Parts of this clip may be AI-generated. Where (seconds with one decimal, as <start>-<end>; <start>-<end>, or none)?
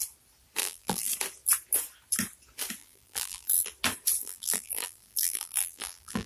0.6-1.1; 2.8-3.7; 4.2-6.3